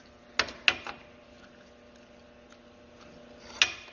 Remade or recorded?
recorded